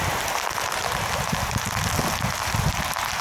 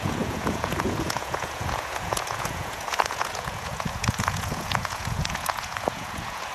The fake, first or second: second